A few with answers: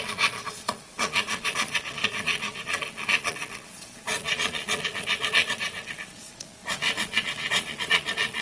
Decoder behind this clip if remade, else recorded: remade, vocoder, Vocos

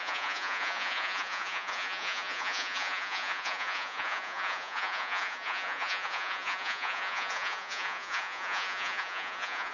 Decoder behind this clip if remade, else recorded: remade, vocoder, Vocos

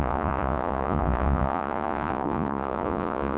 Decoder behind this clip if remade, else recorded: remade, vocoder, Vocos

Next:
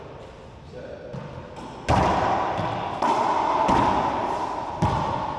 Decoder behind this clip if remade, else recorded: recorded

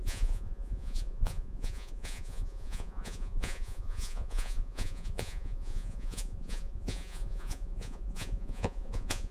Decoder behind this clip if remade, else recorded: remade, vocoder, Vocos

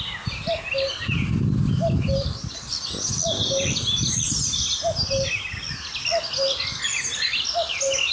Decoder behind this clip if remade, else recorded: recorded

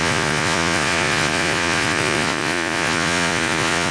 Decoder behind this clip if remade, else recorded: remade, vocoder, Vocos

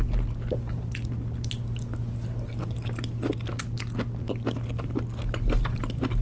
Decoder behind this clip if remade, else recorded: recorded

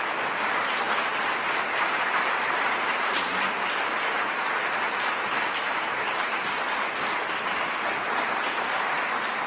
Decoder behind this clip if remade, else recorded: recorded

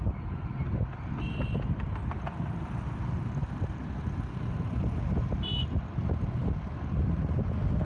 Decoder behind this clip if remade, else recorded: recorded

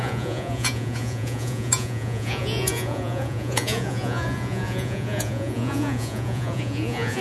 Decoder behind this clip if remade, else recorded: remade, vocoder, Vocos